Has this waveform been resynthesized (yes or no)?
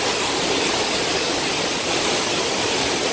no